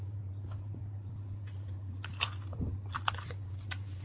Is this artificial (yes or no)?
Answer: no